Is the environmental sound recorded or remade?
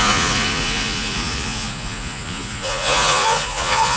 remade